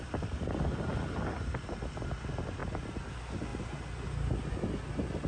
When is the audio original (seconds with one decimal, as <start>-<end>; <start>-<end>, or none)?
0.0-5.3